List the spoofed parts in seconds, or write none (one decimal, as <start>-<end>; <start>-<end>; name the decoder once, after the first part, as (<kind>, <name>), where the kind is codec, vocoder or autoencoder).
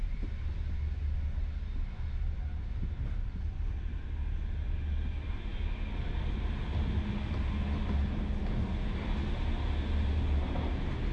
none